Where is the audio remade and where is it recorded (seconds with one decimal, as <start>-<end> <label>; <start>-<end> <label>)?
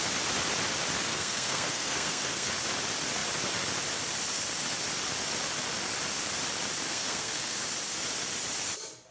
0.0-1.1 recorded; 1.1-2.5 remade; 2.5-6.9 recorded; 6.9-7.6 remade; 7.6-9.1 recorded